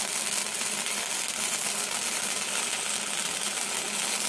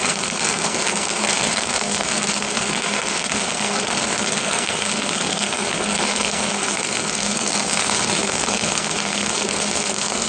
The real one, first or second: first